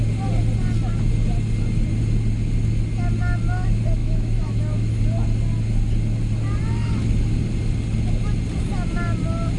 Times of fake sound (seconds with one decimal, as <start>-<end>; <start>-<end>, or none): 4.0-5.0